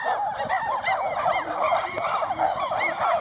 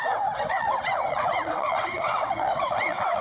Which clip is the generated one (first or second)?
second